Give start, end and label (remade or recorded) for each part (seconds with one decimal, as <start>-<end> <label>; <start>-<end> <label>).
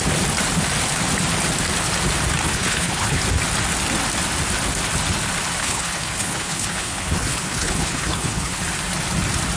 0.0-2.4 recorded; 2.4-3.2 remade; 3.2-5.6 recorded; 5.6-8.6 remade; 8.6-9.6 recorded